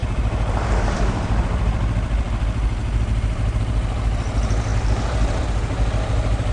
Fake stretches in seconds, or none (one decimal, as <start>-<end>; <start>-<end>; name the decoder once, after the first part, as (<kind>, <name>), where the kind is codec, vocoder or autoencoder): none